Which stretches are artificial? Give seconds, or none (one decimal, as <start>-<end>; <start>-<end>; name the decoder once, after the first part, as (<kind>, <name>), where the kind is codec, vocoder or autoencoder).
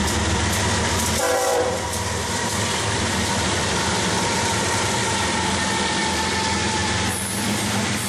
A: 0.0-6.8 (vocoder, BigVGAN v2); 7.3-8.1